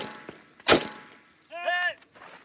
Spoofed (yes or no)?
no